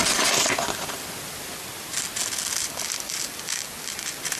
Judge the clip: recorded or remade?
recorded